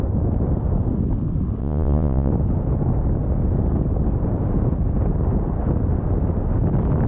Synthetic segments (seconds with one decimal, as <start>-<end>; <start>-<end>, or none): 1.6-2.3